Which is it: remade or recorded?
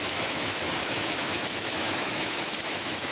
remade